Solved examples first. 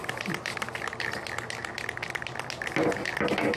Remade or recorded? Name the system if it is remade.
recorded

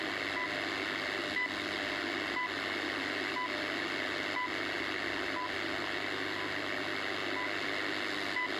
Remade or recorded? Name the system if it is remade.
recorded